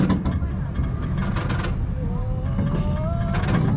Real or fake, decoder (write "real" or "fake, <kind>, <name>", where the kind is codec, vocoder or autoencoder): real